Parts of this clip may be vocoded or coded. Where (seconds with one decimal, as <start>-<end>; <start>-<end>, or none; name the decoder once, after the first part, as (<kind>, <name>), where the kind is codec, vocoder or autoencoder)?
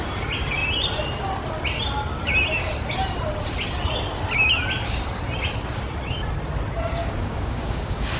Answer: 7.0-8.2 (codec, DAC)